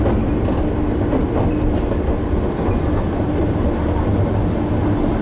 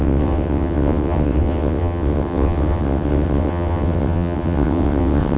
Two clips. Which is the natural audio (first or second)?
first